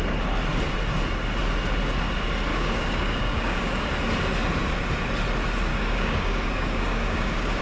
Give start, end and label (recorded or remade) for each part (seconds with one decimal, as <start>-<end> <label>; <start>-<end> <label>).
0.0-2.5 recorded; 2.5-3.9 remade; 3.9-5.7 recorded; 5.7-7.6 remade